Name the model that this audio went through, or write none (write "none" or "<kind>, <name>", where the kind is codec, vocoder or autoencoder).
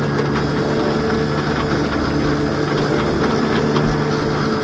none